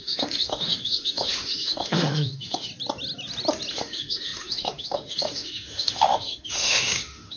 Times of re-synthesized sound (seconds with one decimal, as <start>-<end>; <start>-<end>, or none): 0.0-2.7; 3.7-7.4